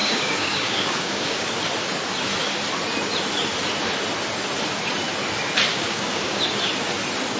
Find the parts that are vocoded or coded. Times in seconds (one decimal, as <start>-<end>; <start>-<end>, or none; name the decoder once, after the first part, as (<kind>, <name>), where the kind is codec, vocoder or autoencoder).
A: 0.0-1.5 (codec, DAC); 5.7-6.4